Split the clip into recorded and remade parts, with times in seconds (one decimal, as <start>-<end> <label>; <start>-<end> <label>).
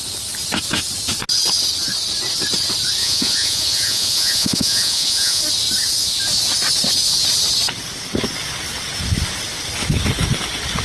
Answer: 0.0-3.0 recorded; 3.0-5.4 remade; 5.4-10.8 recorded